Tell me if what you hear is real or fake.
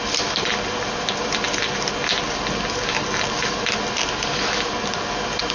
real